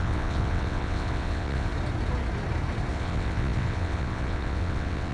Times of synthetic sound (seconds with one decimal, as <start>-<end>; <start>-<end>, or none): 0.0-1.7; 2.9-5.1